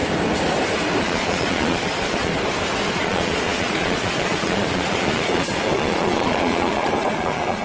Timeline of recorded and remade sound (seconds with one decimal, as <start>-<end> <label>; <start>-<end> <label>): 0.0-1.0 recorded; 1.0-2.3 remade; 2.3-2.9 recorded; 2.9-7.6 remade